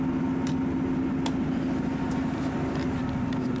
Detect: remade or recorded recorded